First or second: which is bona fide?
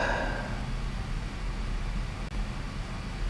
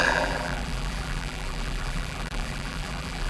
first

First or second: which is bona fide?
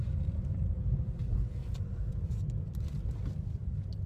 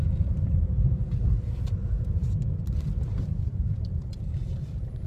first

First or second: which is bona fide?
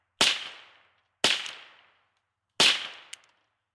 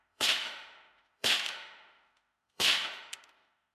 first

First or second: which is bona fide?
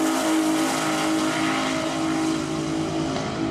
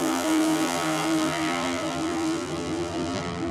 first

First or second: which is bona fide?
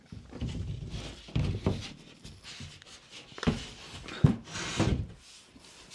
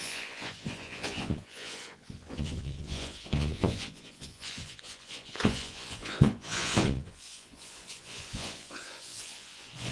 first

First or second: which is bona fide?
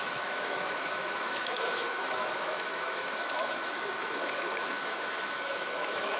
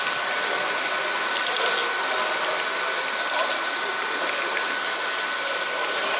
second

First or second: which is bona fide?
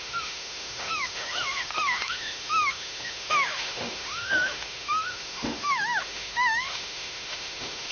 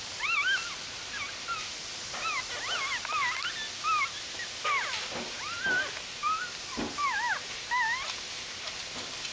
second